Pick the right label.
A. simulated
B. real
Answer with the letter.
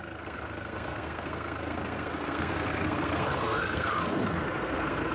A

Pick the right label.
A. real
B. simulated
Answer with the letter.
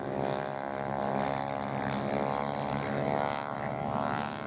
A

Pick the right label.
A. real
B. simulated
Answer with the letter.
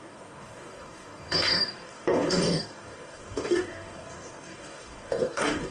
B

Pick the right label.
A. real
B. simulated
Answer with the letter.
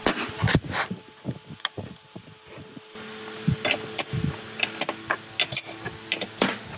A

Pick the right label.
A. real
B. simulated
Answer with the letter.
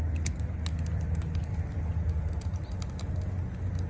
A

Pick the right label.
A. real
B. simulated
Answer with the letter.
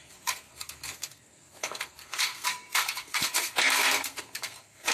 B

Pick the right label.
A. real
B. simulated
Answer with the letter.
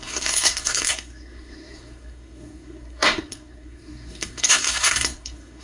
B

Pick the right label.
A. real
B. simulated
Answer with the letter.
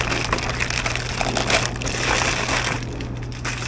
A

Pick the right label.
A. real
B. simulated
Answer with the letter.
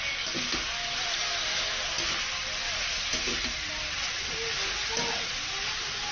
A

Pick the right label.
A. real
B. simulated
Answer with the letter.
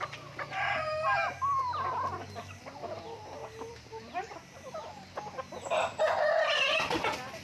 A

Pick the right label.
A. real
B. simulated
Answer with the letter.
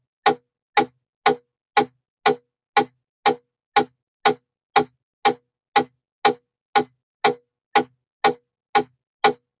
A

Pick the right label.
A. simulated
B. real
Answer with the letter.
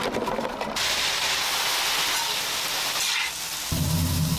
B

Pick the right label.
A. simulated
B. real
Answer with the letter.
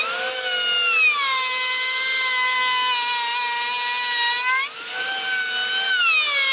B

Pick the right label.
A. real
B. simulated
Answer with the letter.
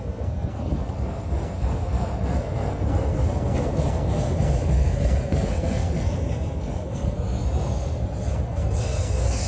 B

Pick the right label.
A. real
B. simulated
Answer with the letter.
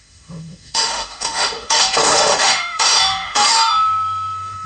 B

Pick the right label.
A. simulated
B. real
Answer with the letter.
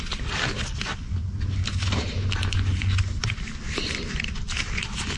B